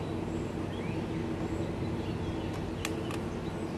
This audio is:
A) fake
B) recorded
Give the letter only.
B